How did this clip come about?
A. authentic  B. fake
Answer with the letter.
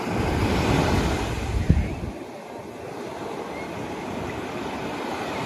A